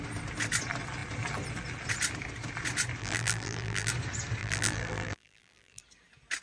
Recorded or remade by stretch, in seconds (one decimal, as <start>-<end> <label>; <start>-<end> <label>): 0.0-3.0 recorded; 3.0-3.9 remade; 3.9-4.4 recorded; 4.4-5.8 remade; 5.8-6.4 recorded